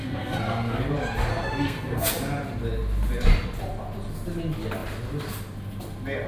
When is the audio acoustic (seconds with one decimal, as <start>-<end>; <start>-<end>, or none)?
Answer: 0.8-1.3; 2.1-6.3